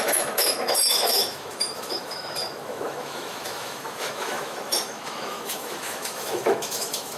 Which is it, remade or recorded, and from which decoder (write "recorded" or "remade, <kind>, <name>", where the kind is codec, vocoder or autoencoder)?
remade, autoencoder, DAC-VAE